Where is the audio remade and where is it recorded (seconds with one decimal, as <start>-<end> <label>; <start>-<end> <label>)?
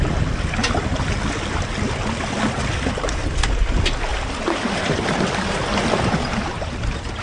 0.0-4.1 recorded; 4.1-7.2 remade